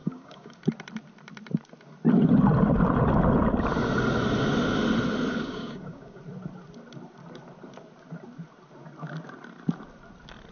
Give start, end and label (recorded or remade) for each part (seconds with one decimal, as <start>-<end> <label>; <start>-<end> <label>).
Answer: 0.0-0.6 remade; 0.6-5.3 recorded; 5.3-6.2 remade; 6.2-10.5 recorded